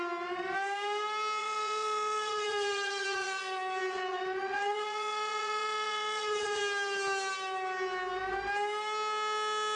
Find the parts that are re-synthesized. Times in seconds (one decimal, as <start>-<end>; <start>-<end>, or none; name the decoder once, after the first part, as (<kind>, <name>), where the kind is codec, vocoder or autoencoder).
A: 1.4-6.6 (vocoder, Vocos)